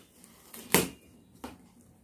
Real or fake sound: real